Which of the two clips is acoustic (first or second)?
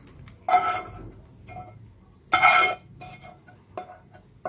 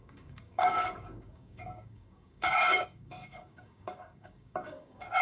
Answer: first